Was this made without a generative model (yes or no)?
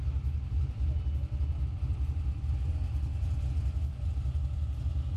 yes